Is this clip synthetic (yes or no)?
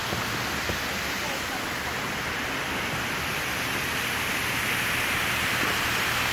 no